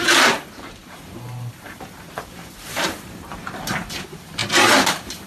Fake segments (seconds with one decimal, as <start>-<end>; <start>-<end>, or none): 0.0-4.4